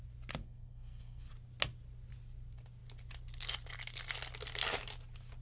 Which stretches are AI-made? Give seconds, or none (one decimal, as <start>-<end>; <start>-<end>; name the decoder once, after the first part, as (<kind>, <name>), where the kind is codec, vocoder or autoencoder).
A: 0.4-1.3 (codec, SNAC)

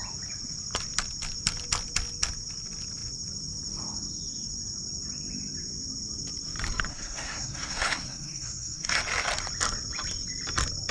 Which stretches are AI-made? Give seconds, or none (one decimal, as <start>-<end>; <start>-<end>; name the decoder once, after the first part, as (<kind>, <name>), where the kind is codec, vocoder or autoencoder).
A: 6.9-9.0 (codec, SNAC)

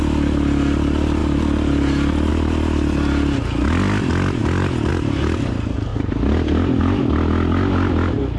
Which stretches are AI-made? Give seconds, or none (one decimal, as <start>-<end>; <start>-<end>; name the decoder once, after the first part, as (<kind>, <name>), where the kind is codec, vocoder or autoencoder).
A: none

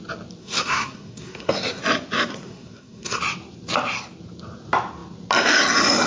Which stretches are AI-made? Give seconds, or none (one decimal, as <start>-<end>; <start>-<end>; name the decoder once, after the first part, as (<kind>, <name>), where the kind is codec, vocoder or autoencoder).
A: 0.4-1.8 (codec, SNAC); 2.3-3.2